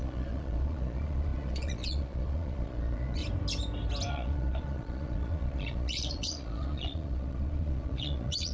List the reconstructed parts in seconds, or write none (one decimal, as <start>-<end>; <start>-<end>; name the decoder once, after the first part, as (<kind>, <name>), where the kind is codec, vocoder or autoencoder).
0.0-3.2 (vocoder, Vocos); 4.1-8.5